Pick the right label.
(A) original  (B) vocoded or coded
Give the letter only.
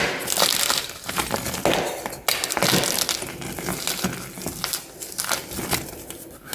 A